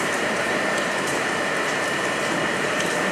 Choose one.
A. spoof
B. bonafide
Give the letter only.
A